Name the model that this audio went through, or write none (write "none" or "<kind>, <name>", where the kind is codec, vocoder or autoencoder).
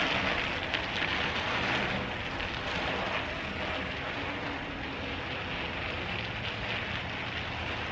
none